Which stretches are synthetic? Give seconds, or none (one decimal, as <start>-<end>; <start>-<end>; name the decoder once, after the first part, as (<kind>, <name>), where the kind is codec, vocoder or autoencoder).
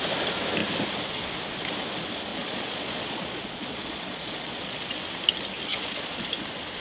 2.3-5.0 (vocoder, Vocos); 5.7-6.3